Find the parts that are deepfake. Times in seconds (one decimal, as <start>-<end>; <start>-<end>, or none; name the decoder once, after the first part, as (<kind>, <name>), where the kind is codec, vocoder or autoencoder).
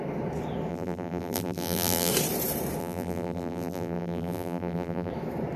0.7-2.1 (vocoder, BigVGAN v2); 2.8-5.1